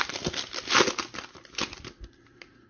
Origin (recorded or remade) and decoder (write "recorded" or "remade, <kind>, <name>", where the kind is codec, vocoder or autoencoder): recorded